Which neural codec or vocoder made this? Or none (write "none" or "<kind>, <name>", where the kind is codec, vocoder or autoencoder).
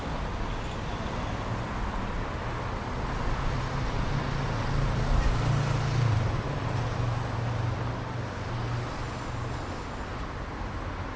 none